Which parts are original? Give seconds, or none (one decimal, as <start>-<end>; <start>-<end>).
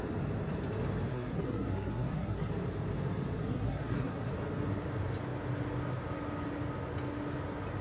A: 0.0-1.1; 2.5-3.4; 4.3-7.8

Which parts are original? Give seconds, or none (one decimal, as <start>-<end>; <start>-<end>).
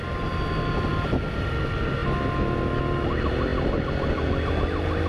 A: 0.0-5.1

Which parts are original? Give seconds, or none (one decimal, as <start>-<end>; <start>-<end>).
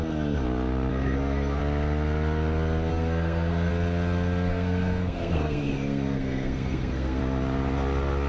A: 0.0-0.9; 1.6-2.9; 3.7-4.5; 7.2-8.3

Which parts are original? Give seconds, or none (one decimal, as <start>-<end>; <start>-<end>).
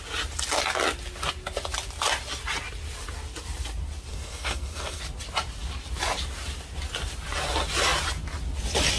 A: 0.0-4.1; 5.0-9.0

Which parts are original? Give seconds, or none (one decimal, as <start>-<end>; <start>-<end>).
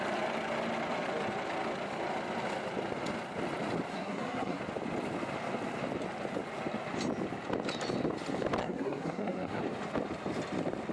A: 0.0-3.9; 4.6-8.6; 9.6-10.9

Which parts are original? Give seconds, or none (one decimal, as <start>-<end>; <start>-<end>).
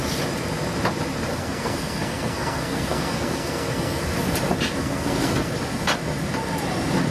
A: 0.0-1.3; 4.0-4.8; 5.5-7.1